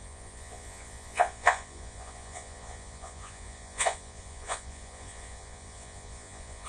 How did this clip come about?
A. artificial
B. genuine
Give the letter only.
A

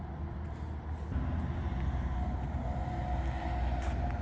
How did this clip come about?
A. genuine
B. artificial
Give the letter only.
A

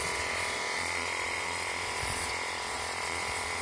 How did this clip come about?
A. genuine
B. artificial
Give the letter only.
B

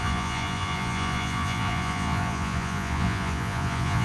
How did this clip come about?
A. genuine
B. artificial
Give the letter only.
B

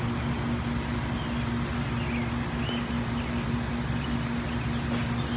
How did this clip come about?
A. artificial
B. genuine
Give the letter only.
B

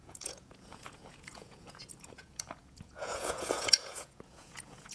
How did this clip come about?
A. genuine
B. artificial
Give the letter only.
B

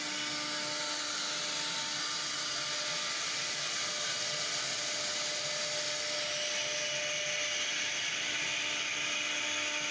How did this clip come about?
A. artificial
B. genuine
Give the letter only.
B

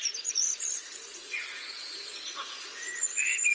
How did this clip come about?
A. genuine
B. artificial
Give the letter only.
B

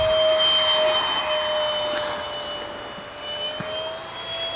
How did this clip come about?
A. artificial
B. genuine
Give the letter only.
B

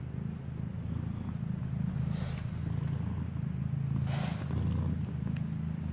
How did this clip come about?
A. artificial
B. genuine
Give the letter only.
B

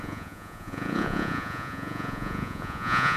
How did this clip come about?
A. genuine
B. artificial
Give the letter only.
B